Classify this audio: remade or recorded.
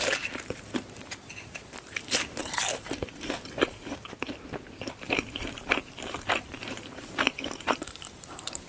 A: remade